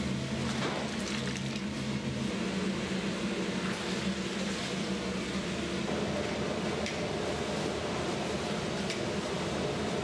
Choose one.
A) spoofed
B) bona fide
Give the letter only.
B